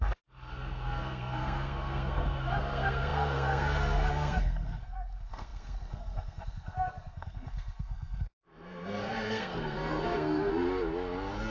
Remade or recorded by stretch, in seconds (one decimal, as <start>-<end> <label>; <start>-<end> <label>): 0.0-10.5 remade; 10.5-11.5 recorded